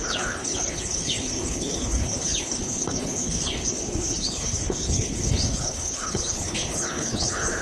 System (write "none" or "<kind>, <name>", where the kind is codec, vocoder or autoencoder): codec, HILCodec